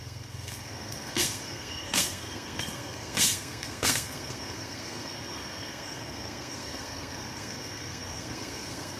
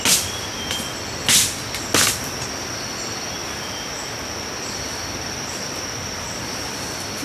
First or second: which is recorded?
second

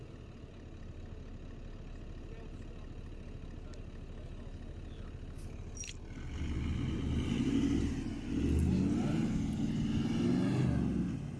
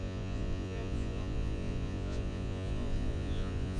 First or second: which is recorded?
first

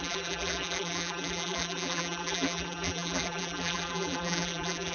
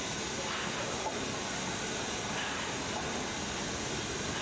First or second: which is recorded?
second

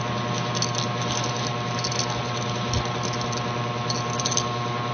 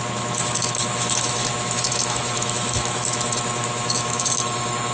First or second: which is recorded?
first